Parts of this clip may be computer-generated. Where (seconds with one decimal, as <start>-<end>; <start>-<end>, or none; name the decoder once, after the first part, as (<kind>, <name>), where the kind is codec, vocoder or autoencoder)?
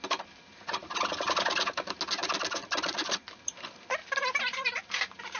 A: 0.8-1.4 (vocoder, BigVGAN v2); 2.6-3.2; 4.0-5.4